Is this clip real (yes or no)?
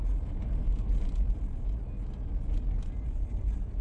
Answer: yes